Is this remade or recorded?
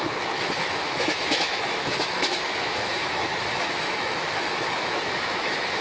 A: remade